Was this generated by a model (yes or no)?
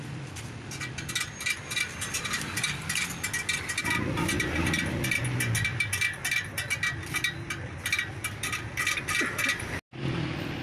no